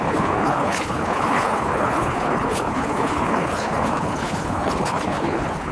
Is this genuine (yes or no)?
no